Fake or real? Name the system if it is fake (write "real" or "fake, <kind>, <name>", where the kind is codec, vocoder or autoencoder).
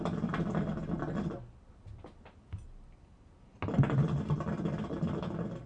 real